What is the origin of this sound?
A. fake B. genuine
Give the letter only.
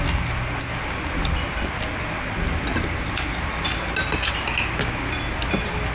B